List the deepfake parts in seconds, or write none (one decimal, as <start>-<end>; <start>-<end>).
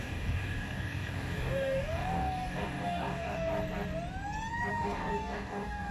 0.0-3.5; 4.7-5.9